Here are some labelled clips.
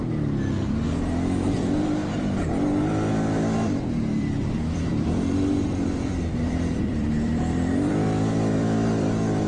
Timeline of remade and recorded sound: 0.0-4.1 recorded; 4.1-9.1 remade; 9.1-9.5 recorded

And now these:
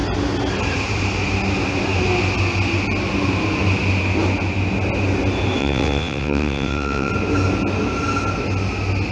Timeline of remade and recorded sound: 0.0-5.6 recorded; 5.6-7.1 remade; 7.1-9.1 recorded

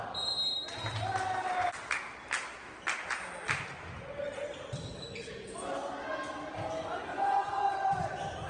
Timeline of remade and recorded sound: 0.0-7.1 recorded; 7.1-8.1 remade; 8.1-8.5 recorded

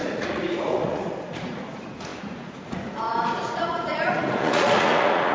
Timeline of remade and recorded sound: 0.0-5.3 remade

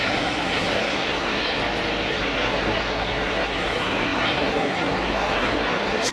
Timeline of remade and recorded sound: 0.0-1.6 remade; 1.6-2.1 recorded; 2.1-6.1 remade